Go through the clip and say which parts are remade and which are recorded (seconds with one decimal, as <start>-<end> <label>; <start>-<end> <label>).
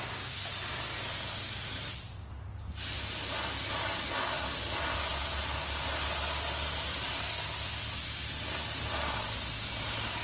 0.0-10.2 recorded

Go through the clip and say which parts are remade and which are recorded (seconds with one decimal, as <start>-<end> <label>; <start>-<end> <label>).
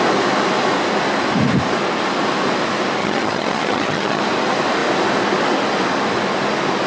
0.0-3.0 recorded; 3.0-4.2 remade; 4.2-6.9 recorded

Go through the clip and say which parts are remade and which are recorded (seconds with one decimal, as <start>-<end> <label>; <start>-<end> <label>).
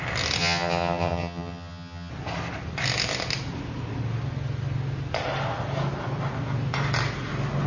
0.0-0.4 recorded; 0.4-2.1 remade; 2.1-7.7 recorded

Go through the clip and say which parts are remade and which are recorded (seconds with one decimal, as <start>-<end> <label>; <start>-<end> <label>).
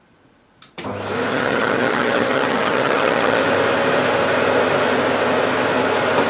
0.0-1.3 recorded; 1.3-3.4 remade; 3.4-6.3 recorded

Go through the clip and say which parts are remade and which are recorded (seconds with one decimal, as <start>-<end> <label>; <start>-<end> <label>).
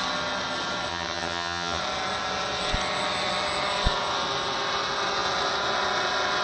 0.0-0.9 recorded; 0.9-1.8 remade; 1.8-6.4 recorded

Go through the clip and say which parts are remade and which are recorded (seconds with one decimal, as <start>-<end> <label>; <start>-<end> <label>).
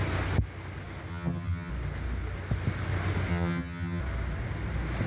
0.0-1.1 recorded; 1.1-1.7 remade; 1.7-3.3 recorded; 3.3-4.0 remade; 4.0-5.1 recorded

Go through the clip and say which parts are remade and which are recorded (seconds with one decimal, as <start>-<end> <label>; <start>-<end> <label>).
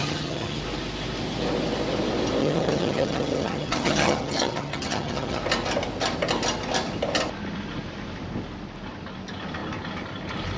0.0-0.6 remade; 0.6-2.4 recorded; 2.4-5.4 remade; 5.4-10.6 recorded